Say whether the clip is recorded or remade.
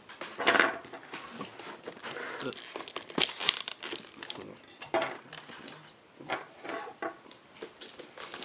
recorded